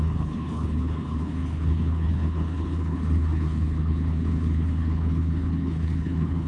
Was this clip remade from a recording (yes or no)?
yes